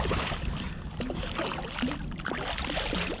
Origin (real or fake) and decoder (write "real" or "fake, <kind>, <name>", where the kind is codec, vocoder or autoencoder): real